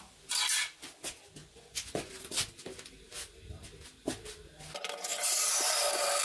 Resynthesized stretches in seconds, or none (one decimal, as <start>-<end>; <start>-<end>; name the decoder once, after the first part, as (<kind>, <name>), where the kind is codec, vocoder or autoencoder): 1.4-2.1 (vocoder, Vocos)